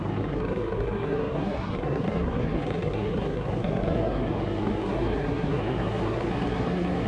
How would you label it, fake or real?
fake